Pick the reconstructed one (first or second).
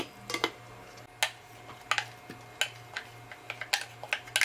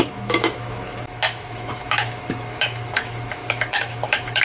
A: second